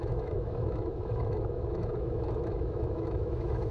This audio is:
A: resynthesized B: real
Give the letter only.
A